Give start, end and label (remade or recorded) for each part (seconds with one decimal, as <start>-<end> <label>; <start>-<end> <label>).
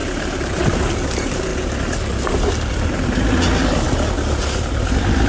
0.0-5.3 recorded